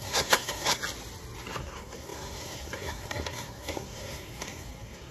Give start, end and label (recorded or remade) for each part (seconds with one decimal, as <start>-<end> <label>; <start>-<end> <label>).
0.0-0.8 remade; 0.8-1.6 recorded; 1.6-5.1 remade